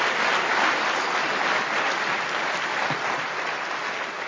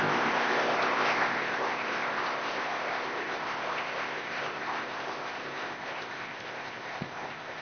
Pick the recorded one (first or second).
first